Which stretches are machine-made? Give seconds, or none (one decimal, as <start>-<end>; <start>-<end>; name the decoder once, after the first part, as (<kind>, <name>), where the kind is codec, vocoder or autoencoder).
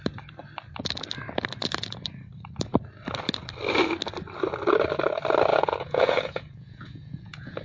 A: 5.5-7.6 (vocoder, Vocos)